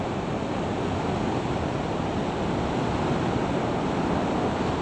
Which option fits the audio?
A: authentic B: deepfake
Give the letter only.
A